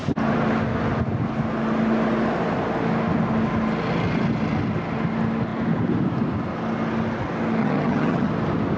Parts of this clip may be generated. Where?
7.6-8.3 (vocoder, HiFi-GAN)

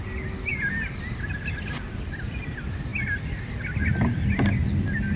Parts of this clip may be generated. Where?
none

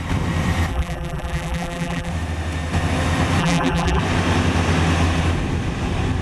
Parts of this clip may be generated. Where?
0.7-2.1 (vocoder, BigVGAN v2); 3.4-4.0

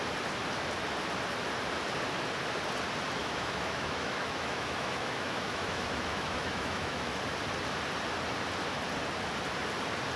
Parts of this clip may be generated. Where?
3.2-7.2 (autoencoder, DAC-VAE)

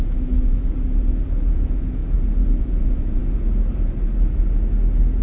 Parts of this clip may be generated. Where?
0.0-2.0 (vocoder, Vocos); 2.6-3.2

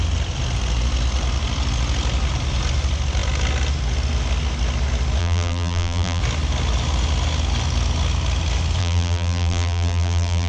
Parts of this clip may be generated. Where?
5.2-6.2 (vocoder, BigVGAN v2); 8.8-10.5